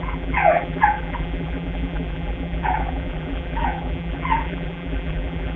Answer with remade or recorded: remade